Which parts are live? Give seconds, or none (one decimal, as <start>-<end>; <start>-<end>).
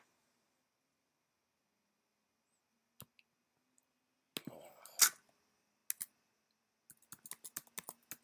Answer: 0.0-8.2